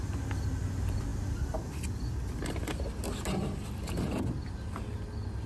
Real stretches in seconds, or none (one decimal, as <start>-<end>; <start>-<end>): 0.0-5.5